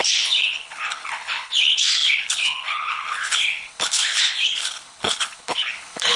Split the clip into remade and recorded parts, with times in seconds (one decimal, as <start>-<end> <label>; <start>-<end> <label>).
0.0-6.2 remade